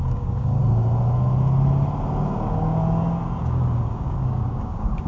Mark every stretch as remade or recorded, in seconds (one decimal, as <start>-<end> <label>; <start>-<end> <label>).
0.0-0.6 remade; 0.6-2.2 recorded; 2.2-2.8 remade; 2.8-3.4 recorded; 3.4-5.1 remade